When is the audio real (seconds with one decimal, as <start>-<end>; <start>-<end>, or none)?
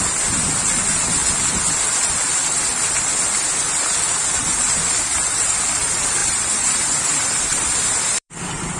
0.0-6.2; 8.4-8.8